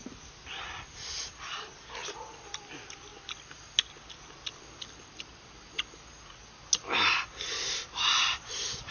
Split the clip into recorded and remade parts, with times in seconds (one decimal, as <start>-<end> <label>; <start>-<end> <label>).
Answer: 0.0-8.1 recorded; 8.1-8.9 remade